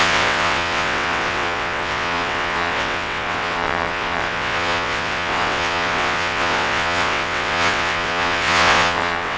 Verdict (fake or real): fake